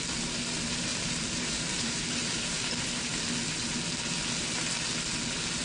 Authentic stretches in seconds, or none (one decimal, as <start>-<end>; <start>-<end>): 0.0-0.9; 2.7-5.6